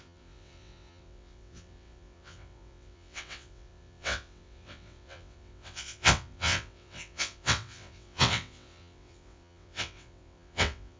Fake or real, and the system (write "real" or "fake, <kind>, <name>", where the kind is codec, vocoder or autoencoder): fake, vocoder, WaveNeXt